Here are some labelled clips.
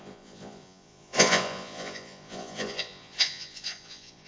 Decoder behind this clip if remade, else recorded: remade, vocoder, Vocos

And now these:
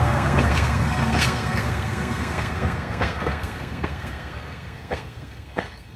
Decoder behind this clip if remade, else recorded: remade, codec, SNAC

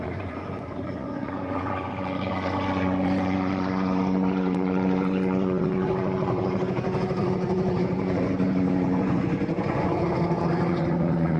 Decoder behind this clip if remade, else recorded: remade, vocoder, Vocos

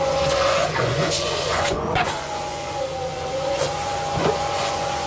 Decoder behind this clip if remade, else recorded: remade, vocoder, Vocos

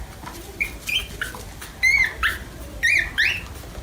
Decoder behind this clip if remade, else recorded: recorded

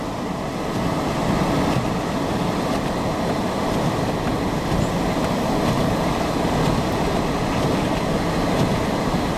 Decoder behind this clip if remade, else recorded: recorded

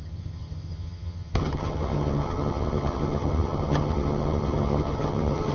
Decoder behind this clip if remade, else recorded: remade, vocoder, HiFi-GAN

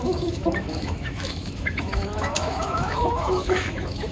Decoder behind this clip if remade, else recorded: remade, autoencoder, DAC-VAE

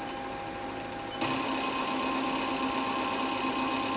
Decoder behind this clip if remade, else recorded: recorded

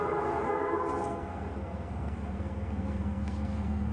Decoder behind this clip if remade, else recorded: remade, codec, SNAC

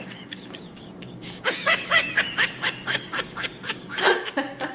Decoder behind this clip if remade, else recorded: remade, codec, DAC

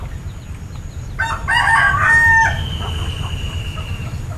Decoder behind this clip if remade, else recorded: recorded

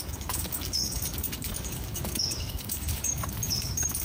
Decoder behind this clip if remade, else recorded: remade, codec, DAC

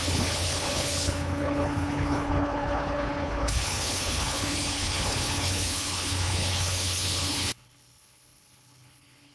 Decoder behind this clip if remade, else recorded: remade, codec, HILCodec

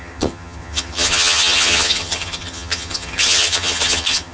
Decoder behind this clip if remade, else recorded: remade, vocoder, HiFi-GAN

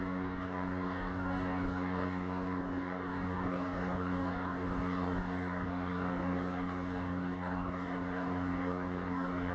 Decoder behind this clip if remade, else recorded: remade, codec, DAC